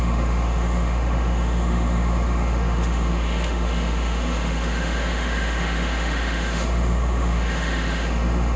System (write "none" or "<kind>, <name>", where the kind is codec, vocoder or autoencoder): autoencoder, DAC-VAE